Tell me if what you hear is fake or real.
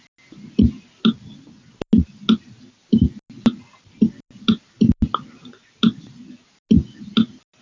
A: real